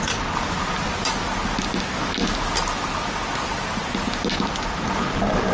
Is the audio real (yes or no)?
yes